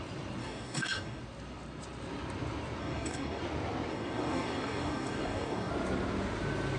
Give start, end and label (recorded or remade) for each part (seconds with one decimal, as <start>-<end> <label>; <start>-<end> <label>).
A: 0.0-0.4 recorded; 0.4-1.2 remade; 1.2-2.8 recorded; 2.8-3.4 remade; 3.4-3.9 recorded; 3.9-5.7 remade; 5.7-6.8 recorded